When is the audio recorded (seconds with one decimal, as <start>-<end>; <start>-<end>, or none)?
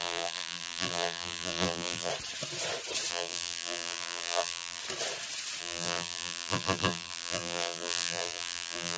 2.1-3.1; 4.8-5.6